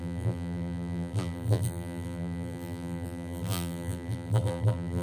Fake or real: fake